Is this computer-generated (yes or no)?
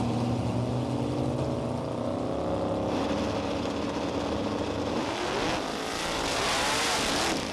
no